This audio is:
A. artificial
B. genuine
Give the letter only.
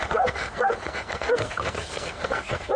A